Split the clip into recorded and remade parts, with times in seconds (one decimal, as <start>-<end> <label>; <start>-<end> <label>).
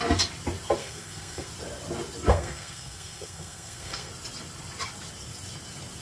0.0-0.8 recorded; 0.8-1.5 remade; 1.5-2.3 recorded; 2.3-4.1 remade; 4.1-6.0 recorded